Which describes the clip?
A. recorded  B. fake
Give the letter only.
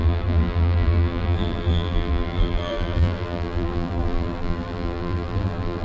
B